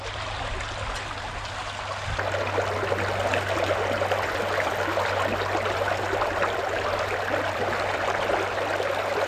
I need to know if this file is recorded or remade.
recorded